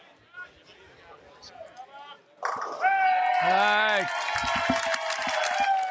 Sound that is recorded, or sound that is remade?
recorded